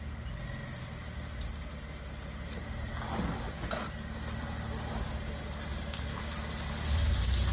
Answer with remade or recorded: recorded